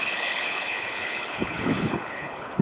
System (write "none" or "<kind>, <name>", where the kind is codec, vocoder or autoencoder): codec, HILCodec